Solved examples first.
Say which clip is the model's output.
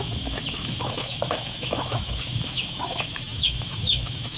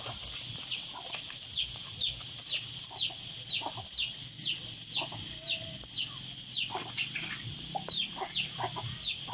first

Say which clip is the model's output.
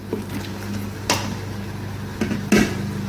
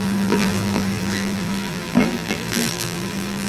second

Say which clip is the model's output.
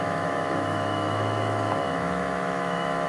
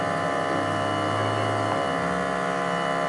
first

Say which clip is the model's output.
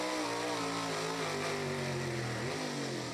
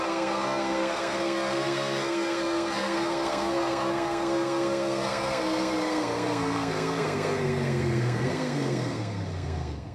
second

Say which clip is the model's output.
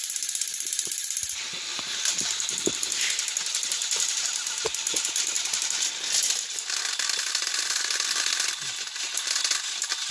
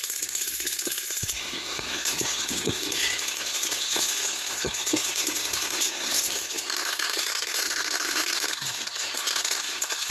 second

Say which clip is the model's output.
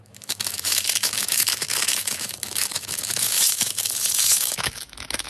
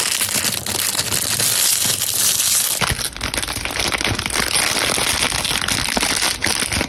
first